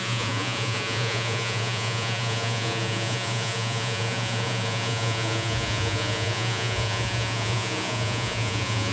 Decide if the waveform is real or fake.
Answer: fake